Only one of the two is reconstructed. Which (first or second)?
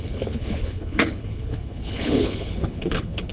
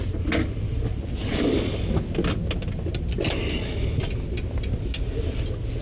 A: first